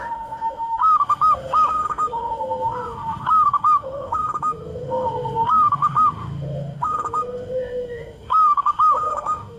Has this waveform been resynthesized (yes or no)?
yes